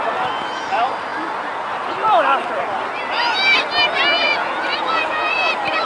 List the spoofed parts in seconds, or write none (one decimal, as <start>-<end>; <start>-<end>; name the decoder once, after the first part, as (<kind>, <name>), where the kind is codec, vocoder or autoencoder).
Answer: 4.2-5.5 (vocoder, Vocos)